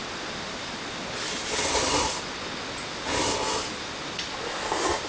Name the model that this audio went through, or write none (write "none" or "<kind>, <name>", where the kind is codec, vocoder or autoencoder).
none